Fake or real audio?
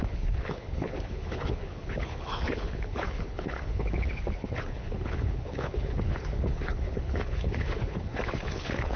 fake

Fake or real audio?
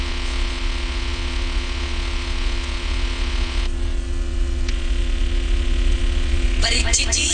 fake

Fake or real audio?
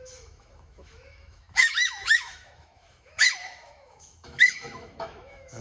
fake